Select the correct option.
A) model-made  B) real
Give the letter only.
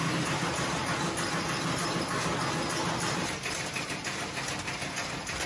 B